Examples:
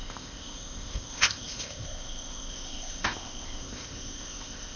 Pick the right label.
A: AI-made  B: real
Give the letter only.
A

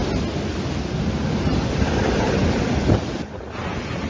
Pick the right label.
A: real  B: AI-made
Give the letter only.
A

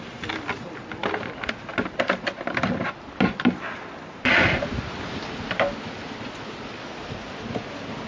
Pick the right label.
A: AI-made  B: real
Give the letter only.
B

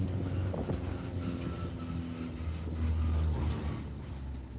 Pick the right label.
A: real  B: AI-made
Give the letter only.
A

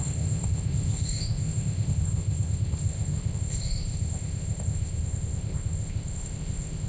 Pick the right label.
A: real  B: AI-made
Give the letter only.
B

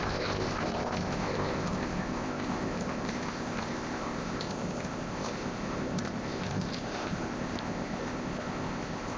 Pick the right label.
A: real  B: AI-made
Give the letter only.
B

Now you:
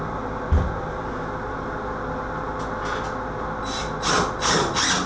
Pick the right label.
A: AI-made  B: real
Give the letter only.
B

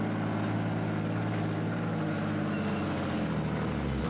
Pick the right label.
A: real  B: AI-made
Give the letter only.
A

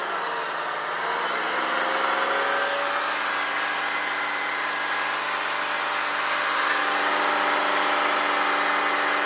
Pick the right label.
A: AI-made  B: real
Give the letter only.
B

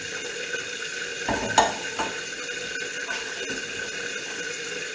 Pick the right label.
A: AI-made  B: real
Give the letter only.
B